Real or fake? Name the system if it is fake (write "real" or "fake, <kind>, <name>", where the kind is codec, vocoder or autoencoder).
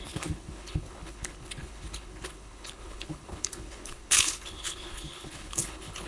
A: fake, codec, HILCodec